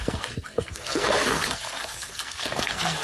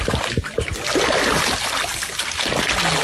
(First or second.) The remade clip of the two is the first